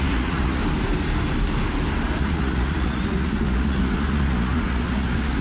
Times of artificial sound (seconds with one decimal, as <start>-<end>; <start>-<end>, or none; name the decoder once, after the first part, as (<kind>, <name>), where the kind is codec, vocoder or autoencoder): 0.0-0.6 (vocoder, Vocos); 2.2-5.4